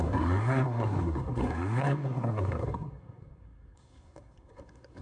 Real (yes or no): no